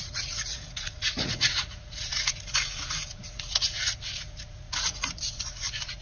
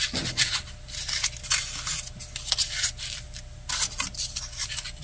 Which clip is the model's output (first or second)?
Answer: first